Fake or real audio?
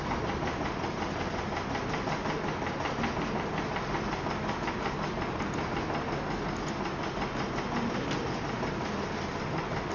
real